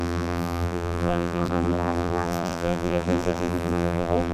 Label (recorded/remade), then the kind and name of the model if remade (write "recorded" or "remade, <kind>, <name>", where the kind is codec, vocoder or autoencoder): remade, vocoder, BigVGAN v2